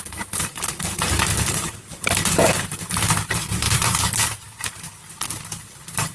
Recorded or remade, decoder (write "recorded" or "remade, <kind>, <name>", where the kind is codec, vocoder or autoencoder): remade, vocoder, BigVGAN v2